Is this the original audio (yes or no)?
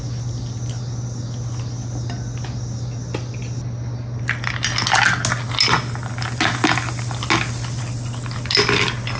yes